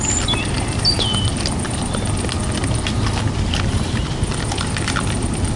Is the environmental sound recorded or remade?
remade